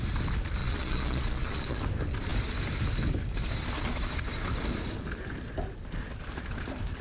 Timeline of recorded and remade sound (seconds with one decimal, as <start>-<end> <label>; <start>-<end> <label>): 0.0-0.6 recorded; 0.6-1.8 remade; 1.8-7.0 recorded